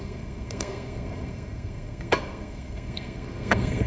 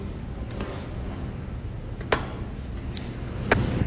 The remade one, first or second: first